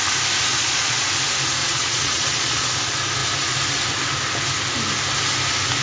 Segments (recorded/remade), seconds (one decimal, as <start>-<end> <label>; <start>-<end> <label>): 0.0-0.5 recorded; 0.5-1.0 remade; 1.0-1.6 recorded; 1.6-2.7 remade; 2.7-5.8 recorded